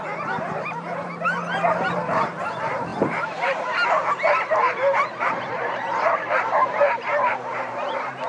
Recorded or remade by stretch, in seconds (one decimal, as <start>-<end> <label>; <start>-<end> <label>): 0.0-8.3 remade